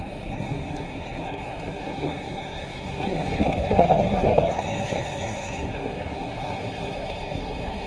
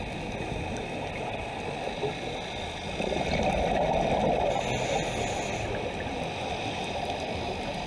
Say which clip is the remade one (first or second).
first